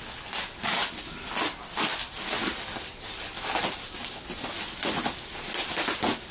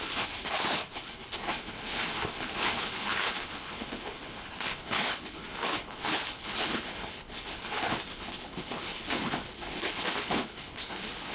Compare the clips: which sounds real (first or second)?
first